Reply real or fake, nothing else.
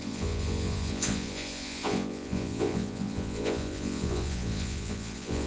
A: fake